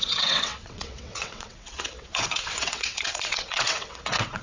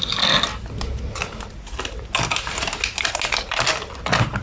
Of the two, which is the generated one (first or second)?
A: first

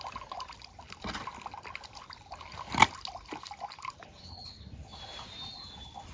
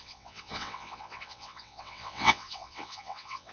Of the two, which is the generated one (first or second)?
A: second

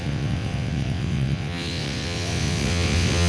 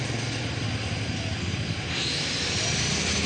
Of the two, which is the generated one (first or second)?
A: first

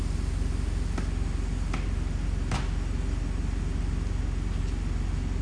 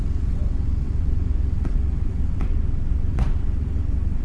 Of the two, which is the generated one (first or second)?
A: second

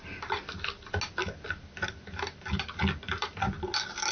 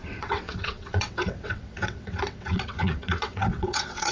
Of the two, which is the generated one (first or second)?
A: second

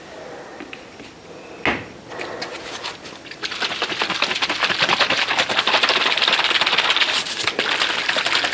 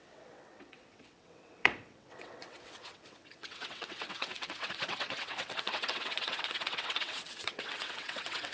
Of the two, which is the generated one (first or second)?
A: second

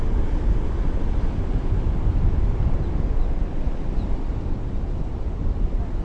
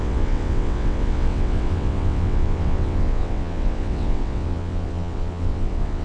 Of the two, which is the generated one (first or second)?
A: second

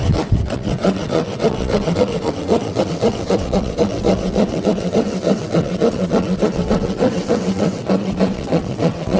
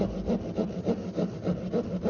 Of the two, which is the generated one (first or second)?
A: first